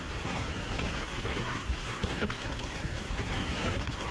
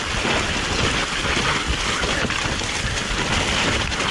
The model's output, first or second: first